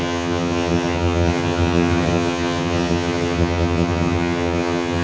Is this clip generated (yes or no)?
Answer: yes